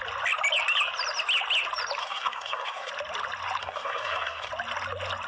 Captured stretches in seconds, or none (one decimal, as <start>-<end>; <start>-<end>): 0.0-2.0; 2.9-3.6; 4.5-5.3